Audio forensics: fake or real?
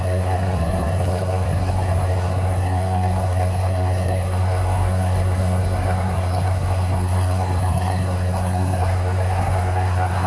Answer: fake